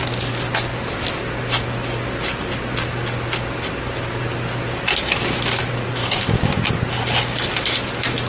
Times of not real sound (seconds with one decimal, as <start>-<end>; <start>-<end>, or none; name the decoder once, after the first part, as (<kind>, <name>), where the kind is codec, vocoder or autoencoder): 6.0-6.7 (codec, DAC)